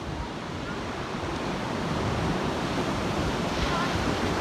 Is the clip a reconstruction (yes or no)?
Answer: yes